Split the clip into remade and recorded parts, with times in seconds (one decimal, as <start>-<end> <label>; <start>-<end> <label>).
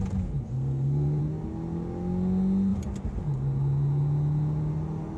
0.0-0.5 recorded; 0.5-1.2 remade; 1.2-5.2 recorded